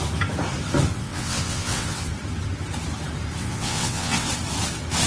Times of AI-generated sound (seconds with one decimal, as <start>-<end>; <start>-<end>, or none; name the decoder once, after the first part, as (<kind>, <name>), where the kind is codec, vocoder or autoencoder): 0.9-2.1 (vocoder, WaveNeXt); 3.4-4.3